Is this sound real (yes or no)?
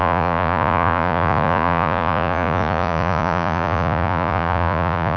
no